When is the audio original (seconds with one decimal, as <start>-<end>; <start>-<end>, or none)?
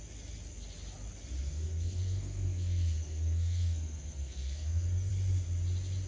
0.0-1.4; 5.1-6.1